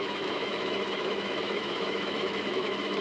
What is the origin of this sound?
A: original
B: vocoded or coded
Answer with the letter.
B